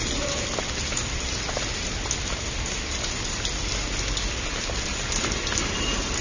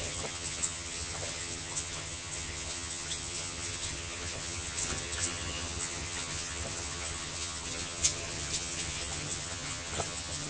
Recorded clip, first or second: first